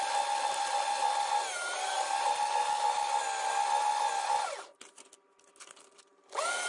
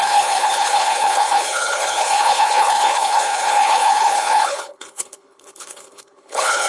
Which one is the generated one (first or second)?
second